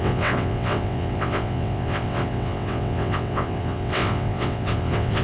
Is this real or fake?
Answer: fake